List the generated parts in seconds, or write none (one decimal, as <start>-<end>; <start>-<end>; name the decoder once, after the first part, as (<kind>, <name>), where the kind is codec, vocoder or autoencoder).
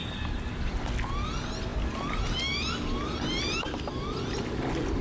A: none